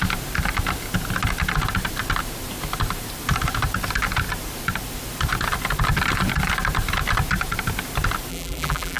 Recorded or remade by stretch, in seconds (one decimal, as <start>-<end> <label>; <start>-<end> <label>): 0.0-8.3 recorded; 8.3-9.0 remade